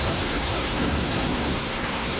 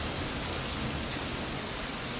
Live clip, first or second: second